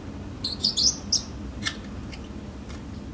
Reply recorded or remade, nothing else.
recorded